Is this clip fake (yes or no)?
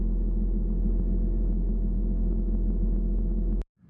no